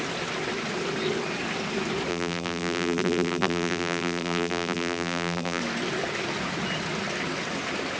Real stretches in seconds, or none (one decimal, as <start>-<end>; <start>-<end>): 0.0-2.1; 5.6-8.0